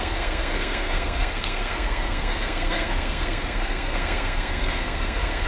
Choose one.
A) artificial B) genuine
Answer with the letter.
A